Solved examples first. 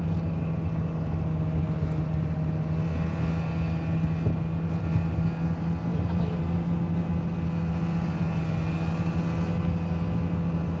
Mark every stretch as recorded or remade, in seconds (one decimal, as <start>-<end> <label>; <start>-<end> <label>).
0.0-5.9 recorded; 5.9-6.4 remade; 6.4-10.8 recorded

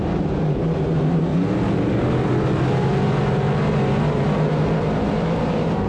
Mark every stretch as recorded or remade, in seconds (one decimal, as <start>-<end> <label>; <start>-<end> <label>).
0.0-1.3 remade; 1.3-4.1 recorded; 4.1-5.9 remade

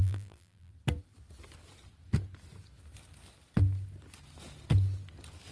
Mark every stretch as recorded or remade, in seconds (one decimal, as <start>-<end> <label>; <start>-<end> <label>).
0.0-0.7 remade; 0.7-5.5 recorded

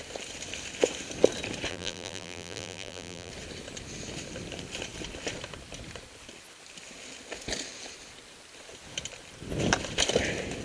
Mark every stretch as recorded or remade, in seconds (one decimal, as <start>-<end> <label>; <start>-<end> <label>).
0.0-1.7 recorded; 1.7-3.3 remade; 3.3-10.6 recorded